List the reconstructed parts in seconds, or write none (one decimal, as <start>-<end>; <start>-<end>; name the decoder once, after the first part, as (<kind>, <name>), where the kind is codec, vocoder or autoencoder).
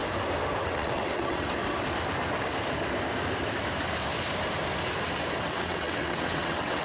0.6-1.6 (vocoder, WaveNeXt); 5.4-6.8